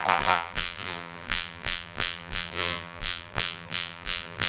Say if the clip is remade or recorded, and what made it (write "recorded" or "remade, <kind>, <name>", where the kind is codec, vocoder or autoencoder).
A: remade, vocoder, BigVGAN v2